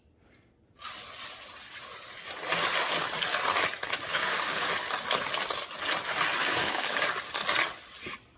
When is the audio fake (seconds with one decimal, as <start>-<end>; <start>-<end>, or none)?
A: 4.1-4.7; 6.4-7.1